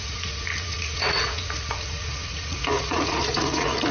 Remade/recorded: remade